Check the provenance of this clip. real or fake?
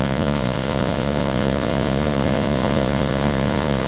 fake